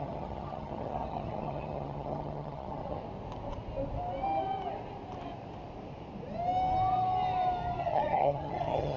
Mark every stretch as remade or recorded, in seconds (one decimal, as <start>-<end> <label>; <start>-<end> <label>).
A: 0.0-3.0 remade; 3.0-7.8 recorded; 7.8-9.0 remade

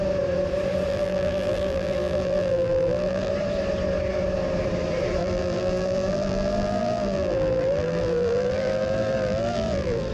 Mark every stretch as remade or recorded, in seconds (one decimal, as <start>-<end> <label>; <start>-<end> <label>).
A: 0.0-0.9 recorded; 0.9-3.3 remade; 3.3-5.2 recorded; 5.2-10.1 remade

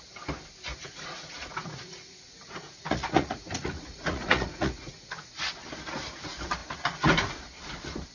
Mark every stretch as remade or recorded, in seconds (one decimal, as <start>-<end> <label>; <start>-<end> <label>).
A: 0.0-0.7 recorded; 0.7-5.5 remade; 5.5-8.1 recorded

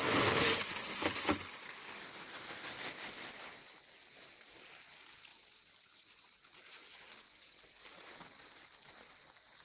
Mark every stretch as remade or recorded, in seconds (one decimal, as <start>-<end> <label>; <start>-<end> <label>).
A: 0.0-7.9 recorded; 7.9-8.4 remade; 8.4-9.6 recorded